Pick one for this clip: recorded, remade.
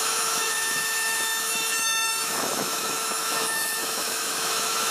remade